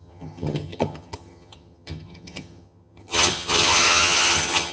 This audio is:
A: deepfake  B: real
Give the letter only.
A